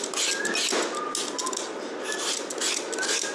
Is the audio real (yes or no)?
yes